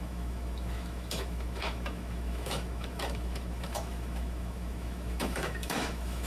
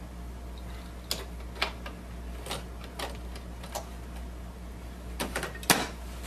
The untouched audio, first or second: second